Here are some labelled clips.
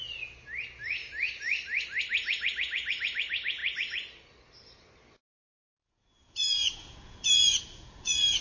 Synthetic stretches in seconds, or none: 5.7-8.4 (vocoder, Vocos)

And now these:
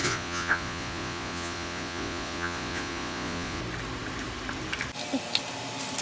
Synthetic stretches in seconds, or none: 0.0-3.6 (vocoder, Vocos)

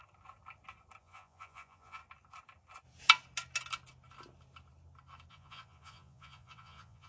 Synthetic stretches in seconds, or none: 1.0-2.0 (vocoder, Vocos); 5.3-7.1

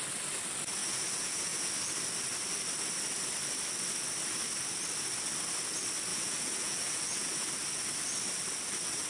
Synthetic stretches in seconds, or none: 0.8-1.7 (vocoder, Vocos); 6.1-7.5